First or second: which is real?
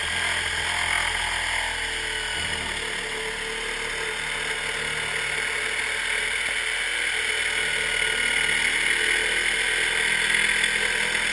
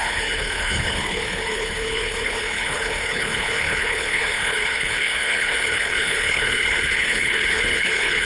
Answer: first